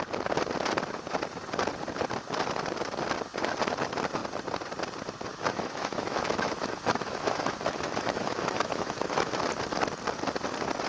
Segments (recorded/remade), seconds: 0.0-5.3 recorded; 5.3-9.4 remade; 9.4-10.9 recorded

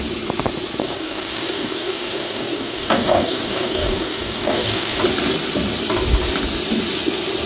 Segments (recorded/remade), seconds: 0.0-0.8 recorded; 0.8-5.0 remade; 5.0-7.5 recorded

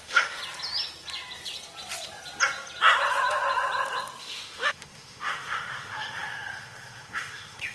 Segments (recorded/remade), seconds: 0.0-0.4 remade; 0.4-4.2 recorded; 4.2-7.7 remade

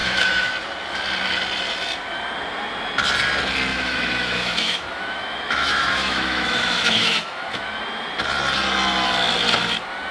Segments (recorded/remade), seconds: 0.0-0.5 remade; 0.5-3.7 recorded; 3.7-7.8 remade; 7.8-10.1 recorded

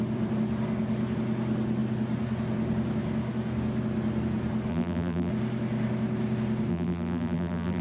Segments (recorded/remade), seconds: 0.0-4.7 recorded; 4.7-5.3 remade; 5.3-6.7 recorded; 6.7-7.8 remade

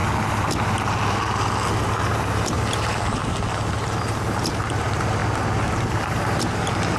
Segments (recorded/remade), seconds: 0.0-2.1 recorded; 2.1-3.2 remade; 3.2-4.5 recorded; 4.5-5.2 remade; 5.2-6.1 recorded; 6.1-7.0 remade

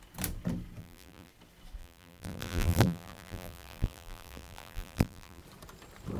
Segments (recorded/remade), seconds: 0.0-0.8 recorded; 0.8-1.3 remade; 1.3-1.8 recorded; 1.8-5.4 remade; 5.4-6.2 recorded

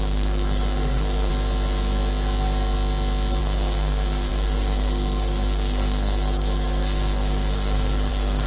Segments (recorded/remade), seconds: 0.0-1.3 remade; 1.3-3.4 recorded; 3.4-8.5 remade